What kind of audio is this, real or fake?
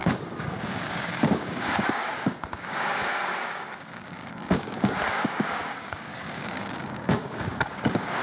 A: fake